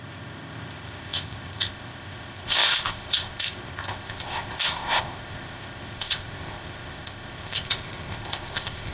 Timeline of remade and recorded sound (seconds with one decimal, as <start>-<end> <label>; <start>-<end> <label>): 0.0-8.9 remade